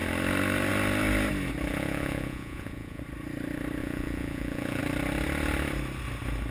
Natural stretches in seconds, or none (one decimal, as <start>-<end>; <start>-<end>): 0.0-1.7; 3.0-3.8; 4.8-6.5